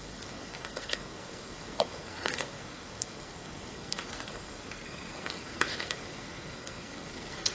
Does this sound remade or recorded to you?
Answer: remade